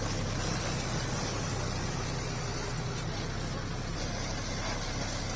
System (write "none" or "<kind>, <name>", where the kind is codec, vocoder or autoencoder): none